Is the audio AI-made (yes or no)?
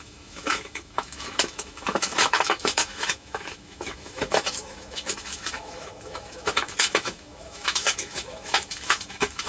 yes